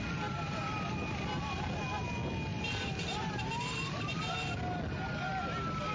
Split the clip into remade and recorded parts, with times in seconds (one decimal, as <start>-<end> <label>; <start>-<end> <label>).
0.0-2.5 recorded; 2.5-4.2 remade; 4.2-5.9 recorded